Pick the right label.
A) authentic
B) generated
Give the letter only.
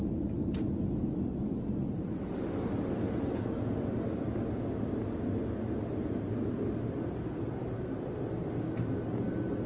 A